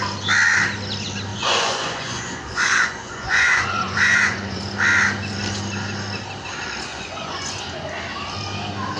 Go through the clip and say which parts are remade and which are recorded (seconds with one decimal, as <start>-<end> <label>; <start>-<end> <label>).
0.0-1.3 recorded; 1.3-4.6 remade; 4.6-6.9 recorded; 6.9-7.6 remade; 7.6-9.0 recorded